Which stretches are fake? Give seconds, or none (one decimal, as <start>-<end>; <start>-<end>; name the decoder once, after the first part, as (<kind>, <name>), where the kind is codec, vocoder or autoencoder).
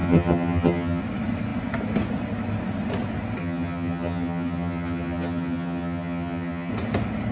0.0-1.0 (vocoder, HiFi-GAN); 3.4-6.7